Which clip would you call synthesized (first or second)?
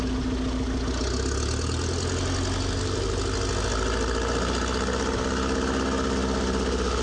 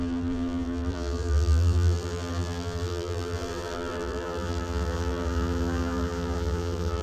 second